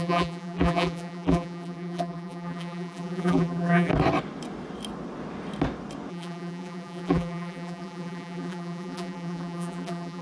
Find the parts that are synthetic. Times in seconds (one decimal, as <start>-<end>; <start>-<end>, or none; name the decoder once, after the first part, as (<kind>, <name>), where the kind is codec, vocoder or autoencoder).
0.0-3.9 (vocoder, BigVGAN v2); 6.1-10.2